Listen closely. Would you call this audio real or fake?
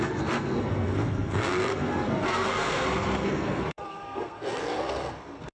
fake